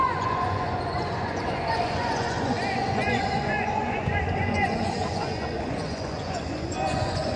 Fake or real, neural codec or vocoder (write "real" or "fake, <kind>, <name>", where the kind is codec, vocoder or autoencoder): fake, vocoder, Vocos